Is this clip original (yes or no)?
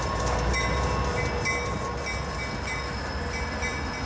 yes